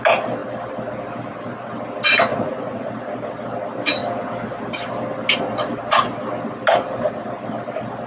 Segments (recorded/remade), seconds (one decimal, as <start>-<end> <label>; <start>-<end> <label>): 0.0-2.3 recorded; 2.3-2.9 remade; 2.9-8.1 recorded